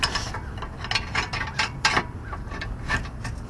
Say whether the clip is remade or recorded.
recorded